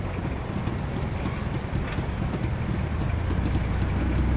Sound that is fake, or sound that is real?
real